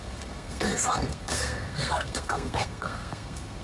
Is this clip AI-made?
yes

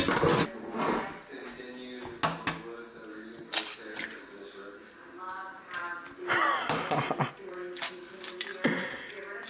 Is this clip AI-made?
no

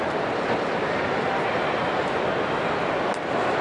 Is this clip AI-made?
no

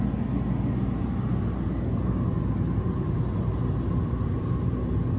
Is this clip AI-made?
no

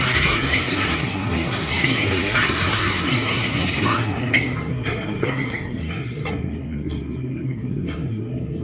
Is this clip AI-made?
yes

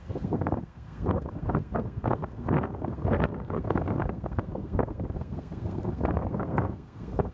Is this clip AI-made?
yes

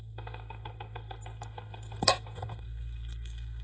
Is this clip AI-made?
yes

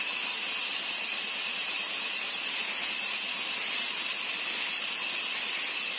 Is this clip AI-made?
no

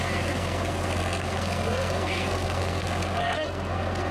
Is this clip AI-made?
yes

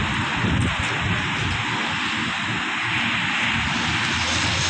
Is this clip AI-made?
no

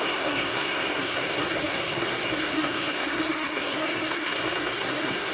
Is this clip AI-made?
yes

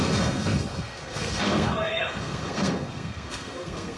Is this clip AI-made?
yes